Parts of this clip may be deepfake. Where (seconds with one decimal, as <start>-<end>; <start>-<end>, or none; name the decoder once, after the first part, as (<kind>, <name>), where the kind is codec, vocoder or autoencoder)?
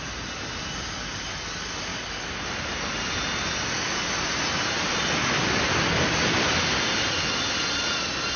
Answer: none